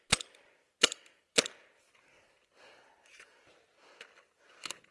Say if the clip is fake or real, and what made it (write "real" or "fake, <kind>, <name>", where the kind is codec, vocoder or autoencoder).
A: real